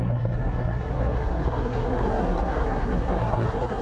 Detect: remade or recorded remade